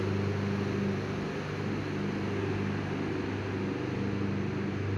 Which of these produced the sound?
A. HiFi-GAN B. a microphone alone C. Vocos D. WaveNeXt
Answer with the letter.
B